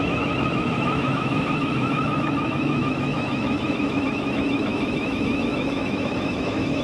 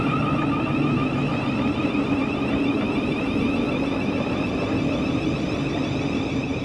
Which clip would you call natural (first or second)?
second